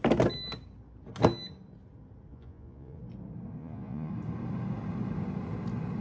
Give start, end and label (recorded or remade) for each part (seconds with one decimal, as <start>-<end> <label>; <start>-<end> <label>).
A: 0.0-2.3 recorded; 2.3-3.0 remade; 3.0-3.6 recorded; 3.6-4.1 remade; 4.1-6.0 recorded